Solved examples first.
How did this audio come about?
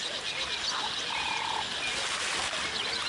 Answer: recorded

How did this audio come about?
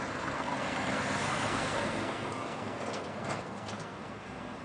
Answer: remade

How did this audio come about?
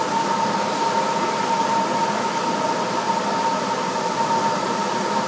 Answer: recorded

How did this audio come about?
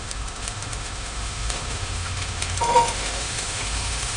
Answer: remade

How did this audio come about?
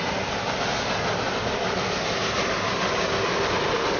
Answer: recorded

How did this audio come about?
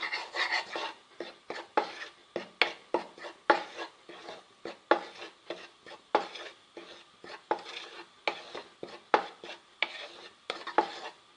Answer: recorded